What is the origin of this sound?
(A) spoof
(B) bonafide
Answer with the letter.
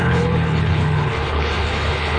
A